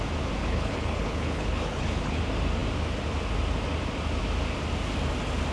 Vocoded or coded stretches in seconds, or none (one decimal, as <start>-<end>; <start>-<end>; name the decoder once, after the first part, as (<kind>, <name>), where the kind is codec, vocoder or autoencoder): 0.4-2.2 (codec, HILCodec)